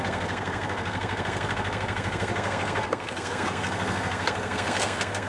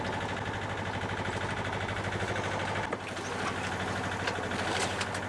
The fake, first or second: first